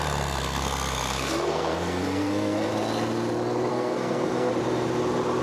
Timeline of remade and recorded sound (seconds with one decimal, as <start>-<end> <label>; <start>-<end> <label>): 0.0-2.7 remade; 2.7-3.7 recorded; 3.7-4.5 remade; 4.5-5.4 recorded